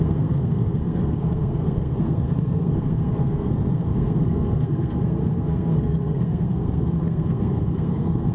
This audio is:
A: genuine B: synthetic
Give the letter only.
B